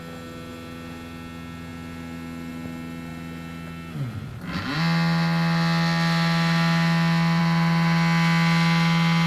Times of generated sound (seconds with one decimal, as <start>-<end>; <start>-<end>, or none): none